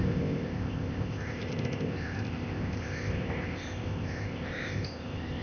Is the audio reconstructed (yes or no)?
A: yes